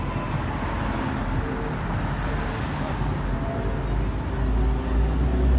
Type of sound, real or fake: real